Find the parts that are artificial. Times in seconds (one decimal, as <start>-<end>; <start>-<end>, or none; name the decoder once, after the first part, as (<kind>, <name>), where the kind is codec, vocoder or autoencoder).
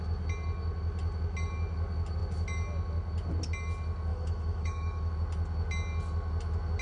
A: 4.1-5.1 (autoencoder, DAC-VAE)